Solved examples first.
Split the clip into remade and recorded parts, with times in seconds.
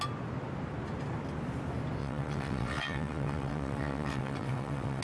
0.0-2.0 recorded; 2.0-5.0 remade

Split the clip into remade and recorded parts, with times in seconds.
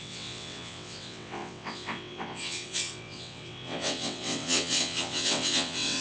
0.0-6.0 remade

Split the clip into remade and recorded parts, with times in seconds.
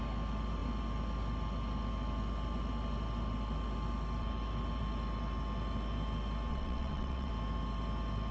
0.0-6.5 recorded; 6.5-7.3 remade; 7.3-8.3 recorded